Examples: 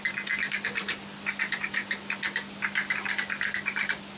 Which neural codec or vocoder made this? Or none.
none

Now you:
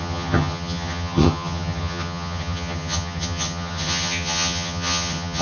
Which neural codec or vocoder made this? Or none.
vocoder, HiFi-GAN